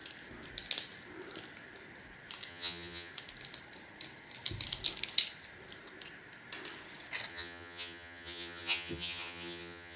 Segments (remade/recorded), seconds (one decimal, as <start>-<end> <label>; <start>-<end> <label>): 0.0-2.5 recorded; 2.5-3.1 remade; 3.1-7.3 recorded; 7.3-10.0 remade